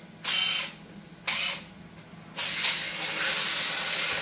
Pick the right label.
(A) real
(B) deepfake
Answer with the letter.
A